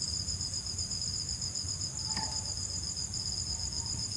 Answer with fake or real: real